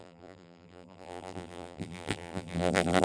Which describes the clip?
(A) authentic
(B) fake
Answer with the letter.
B